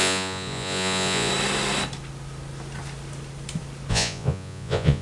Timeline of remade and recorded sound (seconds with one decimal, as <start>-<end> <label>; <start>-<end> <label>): 0.0-1.3 remade; 1.3-3.9 recorded; 3.9-5.0 remade